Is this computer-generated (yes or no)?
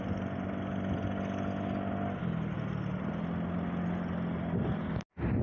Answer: no